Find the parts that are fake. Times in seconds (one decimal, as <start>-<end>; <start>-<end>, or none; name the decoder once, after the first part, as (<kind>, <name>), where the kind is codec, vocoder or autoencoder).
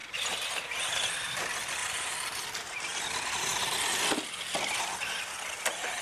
0.0-0.7 (vocoder, BigVGAN v2); 1.8-3.0